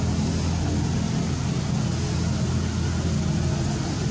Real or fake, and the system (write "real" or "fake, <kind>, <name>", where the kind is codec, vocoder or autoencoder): real